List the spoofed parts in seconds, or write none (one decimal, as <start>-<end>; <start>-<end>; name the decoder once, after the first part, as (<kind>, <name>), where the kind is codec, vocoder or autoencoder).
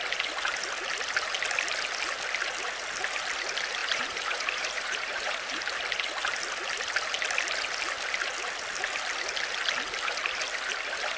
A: 3.8-5.7 (vocoder, BigVGAN v2)